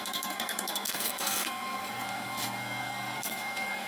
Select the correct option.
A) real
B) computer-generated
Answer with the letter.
B